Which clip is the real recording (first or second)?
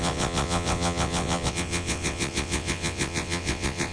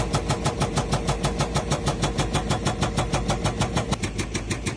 second